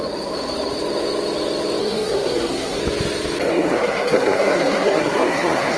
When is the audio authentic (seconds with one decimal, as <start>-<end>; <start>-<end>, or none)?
0.0-1.8; 2.8-3.5